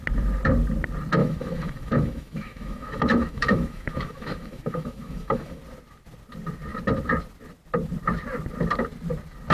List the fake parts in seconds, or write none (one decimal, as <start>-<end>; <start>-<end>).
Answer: 1.2-5.6